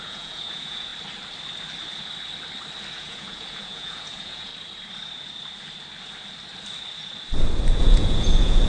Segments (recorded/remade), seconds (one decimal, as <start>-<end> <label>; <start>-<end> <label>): 0.0-0.9 remade; 0.9-2.9 recorded; 2.9-4.5 remade; 4.5-7.8 recorded; 7.8-8.7 remade